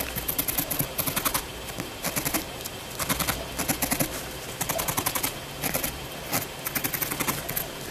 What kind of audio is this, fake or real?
fake